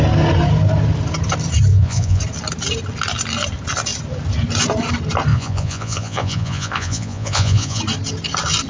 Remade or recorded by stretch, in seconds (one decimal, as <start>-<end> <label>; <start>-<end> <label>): 0.0-1.7 recorded; 1.7-2.2 remade; 2.2-5.3 recorded; 5.3-7.8 remade; 7.8-8.7 recorded